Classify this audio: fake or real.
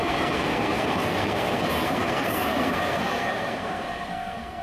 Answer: fake